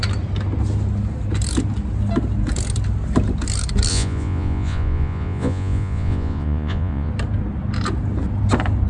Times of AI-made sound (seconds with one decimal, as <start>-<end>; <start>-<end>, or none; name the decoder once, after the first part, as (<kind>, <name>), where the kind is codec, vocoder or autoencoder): 3.9-7.1 (vocoder, Vocos)

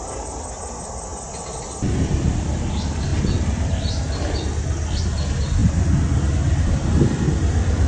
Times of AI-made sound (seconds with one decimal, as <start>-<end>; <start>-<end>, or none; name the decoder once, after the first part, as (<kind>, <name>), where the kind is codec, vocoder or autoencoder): none

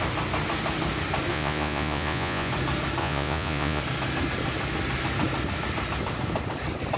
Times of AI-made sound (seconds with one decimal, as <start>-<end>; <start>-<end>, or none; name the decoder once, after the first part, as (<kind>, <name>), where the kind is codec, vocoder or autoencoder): 1.3-2.5 (vocoder, Vocos); 3.0-3.8